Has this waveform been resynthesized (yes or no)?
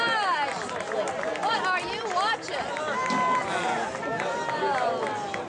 no